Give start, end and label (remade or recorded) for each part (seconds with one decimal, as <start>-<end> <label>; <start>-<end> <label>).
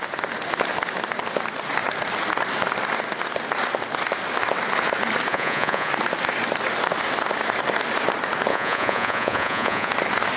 0.0-5.3 recorded; 5.3-5.9 remade; 5.9-8.5 recorded; 8.5-9.9 remade; 9.9-10.4 recorded